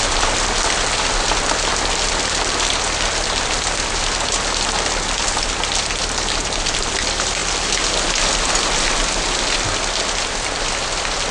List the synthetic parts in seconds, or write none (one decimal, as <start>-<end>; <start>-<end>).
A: none